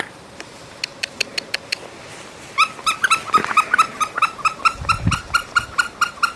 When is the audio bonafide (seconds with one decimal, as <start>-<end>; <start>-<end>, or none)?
0.0-6.4